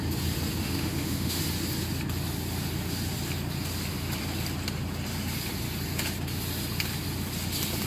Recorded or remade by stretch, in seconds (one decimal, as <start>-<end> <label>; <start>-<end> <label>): 0.0-0.6 recorded; 0.6-1.4 remade; 1.4-7.9 recorded